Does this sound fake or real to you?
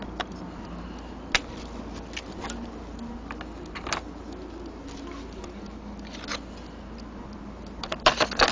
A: real